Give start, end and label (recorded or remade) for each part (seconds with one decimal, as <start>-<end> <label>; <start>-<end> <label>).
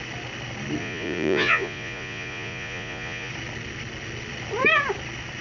0.0-0.8 recorded; 0.8-3.3 remade; 3.3-5.4 recorded